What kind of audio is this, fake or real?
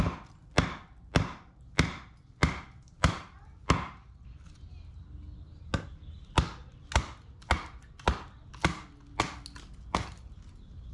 real